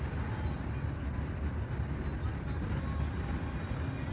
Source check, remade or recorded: recorded